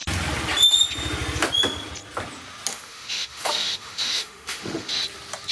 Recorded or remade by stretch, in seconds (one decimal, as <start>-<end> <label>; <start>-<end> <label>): 0.0-2.7 recorded; 2.7-4.9 remade; 4.9-5.5 recorded